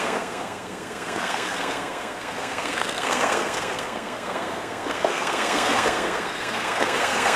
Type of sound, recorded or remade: remade